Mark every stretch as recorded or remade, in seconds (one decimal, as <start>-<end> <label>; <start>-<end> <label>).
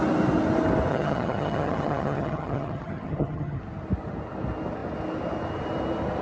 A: 0.0-0.9 recorded; 0.9-3.6 remade; 3.6-6.2 recorded